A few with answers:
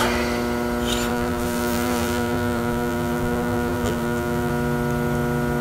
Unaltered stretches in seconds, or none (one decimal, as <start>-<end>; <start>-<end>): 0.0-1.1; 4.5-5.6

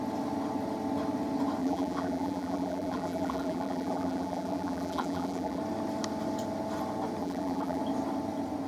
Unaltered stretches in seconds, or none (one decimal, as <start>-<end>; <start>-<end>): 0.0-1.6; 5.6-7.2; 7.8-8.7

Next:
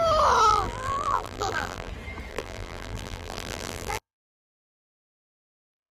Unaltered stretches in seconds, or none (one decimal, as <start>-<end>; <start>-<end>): 0.0-0.5; 1.9-2.3

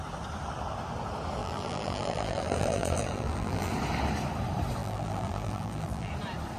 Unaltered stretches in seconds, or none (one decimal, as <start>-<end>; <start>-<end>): 0.0-1.4; 3.7-4.8; 6.1-6.6